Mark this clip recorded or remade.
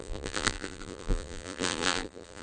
remade